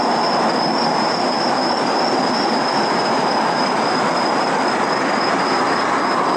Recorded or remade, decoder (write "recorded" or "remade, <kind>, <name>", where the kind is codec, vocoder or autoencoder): recorded